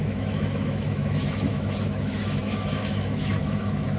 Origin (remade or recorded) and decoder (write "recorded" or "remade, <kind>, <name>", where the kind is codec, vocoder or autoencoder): remade, autoencoder, DAC-VAE